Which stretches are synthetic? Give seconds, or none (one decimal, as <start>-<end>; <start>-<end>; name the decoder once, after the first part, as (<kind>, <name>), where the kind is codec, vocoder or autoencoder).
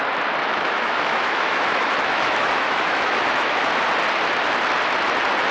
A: 0.4-3.7 (autoencoder, DAC-VAE)